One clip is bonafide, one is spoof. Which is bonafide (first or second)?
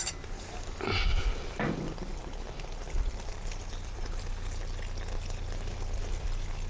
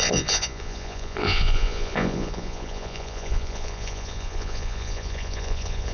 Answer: first